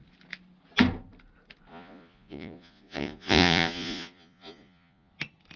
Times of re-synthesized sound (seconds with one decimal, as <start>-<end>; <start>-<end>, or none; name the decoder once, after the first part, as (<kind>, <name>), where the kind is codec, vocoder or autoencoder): 1.7-5.1 (vocoder, Vocos)